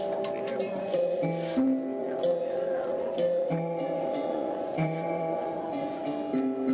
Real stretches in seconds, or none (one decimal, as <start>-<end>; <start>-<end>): 0.0-0.5; 1.2-2.0; 6.0-6.7

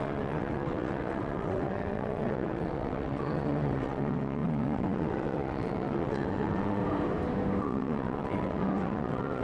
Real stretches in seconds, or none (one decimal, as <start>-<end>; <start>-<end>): 6.8-7.6

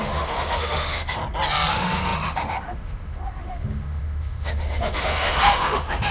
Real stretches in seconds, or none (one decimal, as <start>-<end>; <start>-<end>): 1.2-1.7

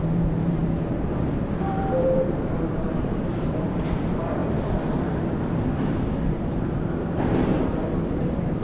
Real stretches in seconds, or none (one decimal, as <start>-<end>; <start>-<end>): 4.4-5.4

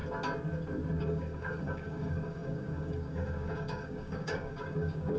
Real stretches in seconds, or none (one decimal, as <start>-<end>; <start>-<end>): 0.0-1.0